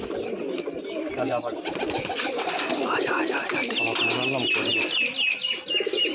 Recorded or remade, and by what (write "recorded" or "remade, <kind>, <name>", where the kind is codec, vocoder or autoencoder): recorded